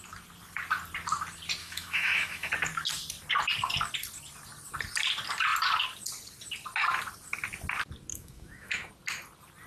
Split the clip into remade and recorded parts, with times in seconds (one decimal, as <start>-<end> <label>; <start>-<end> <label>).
0.0-1.6 recorded; 1.6-2.5 remade; 2.5-8.1 recorded; 8.1-8.9 remade; 8.9-9.7 recorded